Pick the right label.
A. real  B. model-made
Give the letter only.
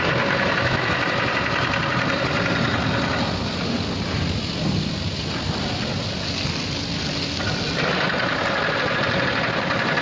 A